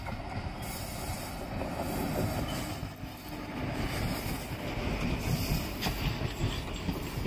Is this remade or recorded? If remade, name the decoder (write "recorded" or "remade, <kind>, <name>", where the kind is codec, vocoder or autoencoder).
recorded